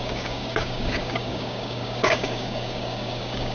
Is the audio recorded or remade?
remade